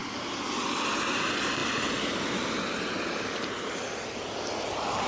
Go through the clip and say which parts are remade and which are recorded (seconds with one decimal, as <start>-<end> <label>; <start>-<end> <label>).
0.0-5.1 recorded

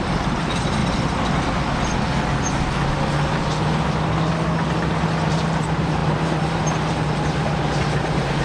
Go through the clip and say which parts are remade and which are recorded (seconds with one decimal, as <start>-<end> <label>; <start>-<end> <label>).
0.0-0.8 remade; 0.8-5.3 recorded; 5.3-8.4 remade

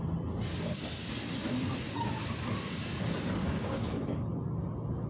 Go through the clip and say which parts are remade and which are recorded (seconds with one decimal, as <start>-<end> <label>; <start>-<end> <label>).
0.0-3.4 recorded; 3.4-4.3 remade; 4.3-5.1 recorded